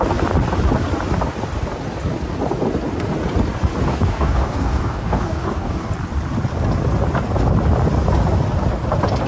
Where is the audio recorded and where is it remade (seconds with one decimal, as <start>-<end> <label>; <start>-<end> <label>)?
0.0-3.9 recorded; 3.9-5.9 remade; 5.9-9.3 recorded